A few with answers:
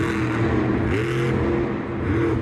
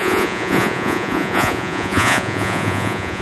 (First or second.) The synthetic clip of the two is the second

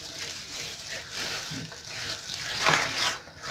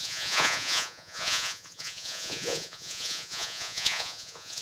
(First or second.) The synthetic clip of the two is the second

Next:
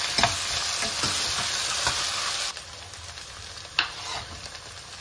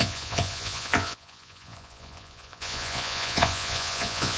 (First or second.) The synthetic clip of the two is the second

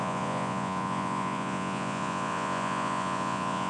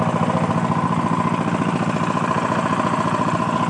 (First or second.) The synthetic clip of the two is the first